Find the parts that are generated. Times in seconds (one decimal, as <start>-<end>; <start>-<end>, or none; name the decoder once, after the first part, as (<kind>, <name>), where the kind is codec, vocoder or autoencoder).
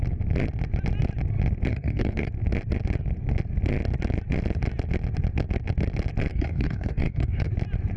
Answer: 1.7-2.3 (codec, DAC); 6.3-7.5